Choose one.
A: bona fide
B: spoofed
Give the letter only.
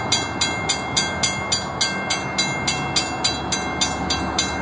A